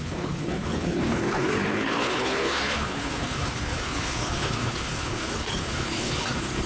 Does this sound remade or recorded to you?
remade